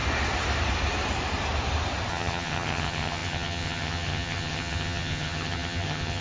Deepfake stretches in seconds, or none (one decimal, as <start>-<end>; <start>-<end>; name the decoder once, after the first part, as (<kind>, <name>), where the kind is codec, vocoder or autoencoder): 2.1-6.2 (vocoder, HiFi-GAN)